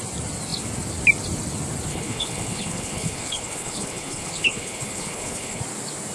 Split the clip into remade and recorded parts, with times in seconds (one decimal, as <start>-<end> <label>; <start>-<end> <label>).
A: 0.0-1.9 recorded; 1.9-5.6 remade; 5.6-6.1 recorded